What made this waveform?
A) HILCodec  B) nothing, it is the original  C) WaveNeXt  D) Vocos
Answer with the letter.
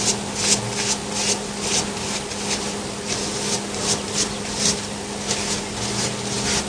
B